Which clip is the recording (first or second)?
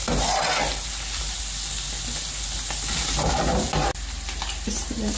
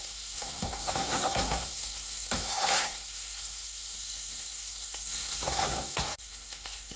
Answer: first